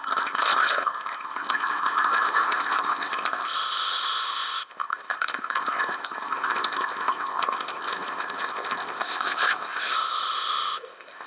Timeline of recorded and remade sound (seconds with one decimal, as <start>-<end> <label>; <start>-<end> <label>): 0.0-11.3 remade